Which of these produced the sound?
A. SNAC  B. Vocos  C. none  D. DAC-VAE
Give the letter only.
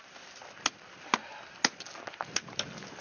C